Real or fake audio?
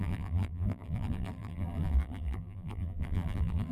fake